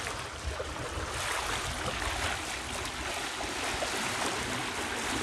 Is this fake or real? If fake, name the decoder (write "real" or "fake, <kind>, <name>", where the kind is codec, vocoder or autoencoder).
real